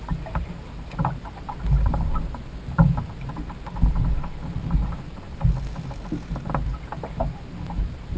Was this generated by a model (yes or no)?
no